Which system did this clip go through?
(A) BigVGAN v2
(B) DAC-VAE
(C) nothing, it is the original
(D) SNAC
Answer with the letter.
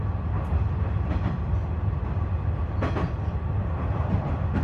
C